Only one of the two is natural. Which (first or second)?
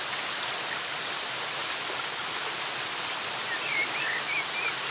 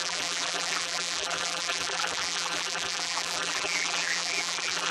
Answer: first